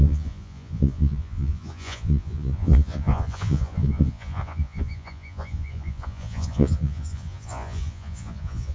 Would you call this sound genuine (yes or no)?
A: no